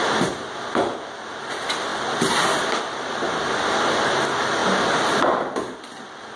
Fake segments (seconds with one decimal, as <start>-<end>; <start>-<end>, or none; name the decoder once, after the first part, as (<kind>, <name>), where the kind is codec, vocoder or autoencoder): none